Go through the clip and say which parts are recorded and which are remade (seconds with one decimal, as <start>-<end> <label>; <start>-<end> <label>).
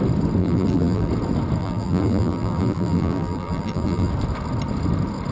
0.0-0.4 recorded; 0.4-1.1 remade; 1.1-1.6 recorded; 1.6-4.1 remade; 4.1-5.3 recorded